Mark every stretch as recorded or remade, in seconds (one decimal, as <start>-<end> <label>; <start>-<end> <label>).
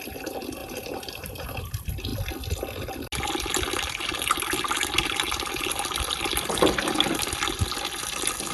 0.0-0.6 recorded; 0.6-1.6 remade; 1.6-8.5 recorded